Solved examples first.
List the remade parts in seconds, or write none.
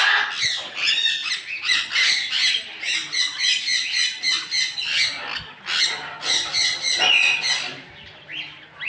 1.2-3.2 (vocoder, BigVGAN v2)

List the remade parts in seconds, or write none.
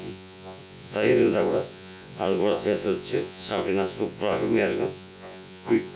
0.0-6.0 (vocoder, Vocos)